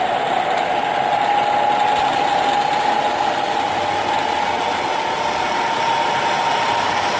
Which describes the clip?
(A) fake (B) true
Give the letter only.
B